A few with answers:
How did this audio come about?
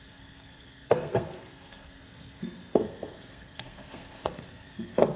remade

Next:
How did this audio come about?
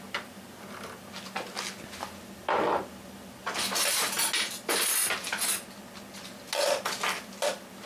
recorded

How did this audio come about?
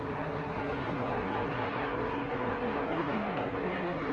remade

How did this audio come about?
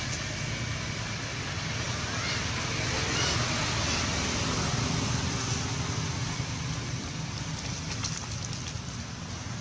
recorded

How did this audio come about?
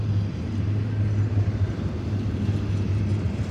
recorded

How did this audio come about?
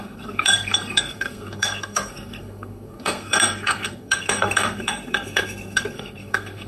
remade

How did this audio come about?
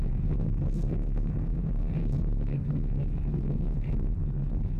remade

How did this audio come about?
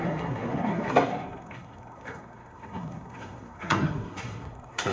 remade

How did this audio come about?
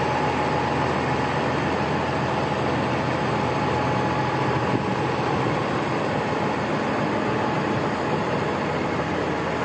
recorded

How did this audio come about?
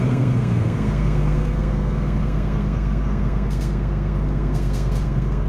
remade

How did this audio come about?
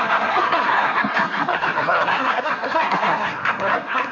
remade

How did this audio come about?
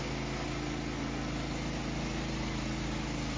recorded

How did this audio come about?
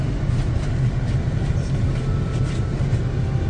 recorded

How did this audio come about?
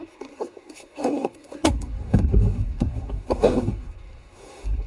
remade